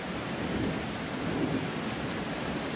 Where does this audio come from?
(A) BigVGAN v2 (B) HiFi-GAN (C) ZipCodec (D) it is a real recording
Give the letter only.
A